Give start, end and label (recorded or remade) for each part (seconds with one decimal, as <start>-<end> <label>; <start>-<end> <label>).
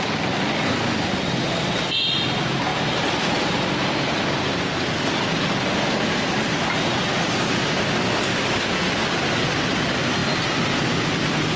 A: 0.0-11.6 recorded